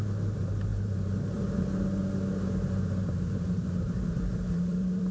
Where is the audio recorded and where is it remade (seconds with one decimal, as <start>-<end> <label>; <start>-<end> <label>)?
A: 0.0-2.0 remade; 2.0-3.0 recorded; 3.0-5.1 remade